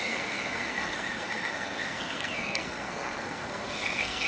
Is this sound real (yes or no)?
no